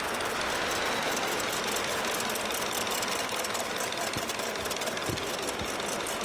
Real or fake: real